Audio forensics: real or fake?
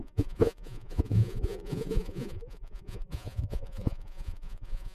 fake